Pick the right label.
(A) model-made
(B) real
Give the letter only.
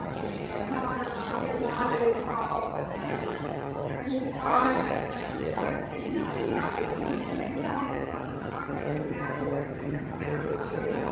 A